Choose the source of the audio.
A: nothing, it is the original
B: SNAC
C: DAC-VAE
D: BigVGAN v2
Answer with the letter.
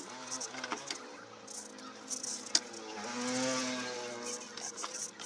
A